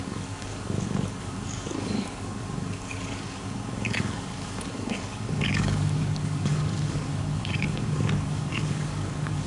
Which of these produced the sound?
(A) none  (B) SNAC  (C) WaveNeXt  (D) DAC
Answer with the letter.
D